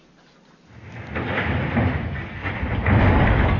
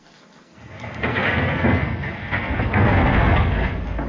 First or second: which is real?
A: first